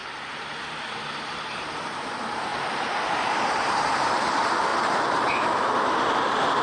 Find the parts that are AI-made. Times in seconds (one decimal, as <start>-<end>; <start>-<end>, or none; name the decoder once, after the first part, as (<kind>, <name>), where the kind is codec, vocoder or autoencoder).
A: 0.0-6.6 (vocoder, BigVGAN v2)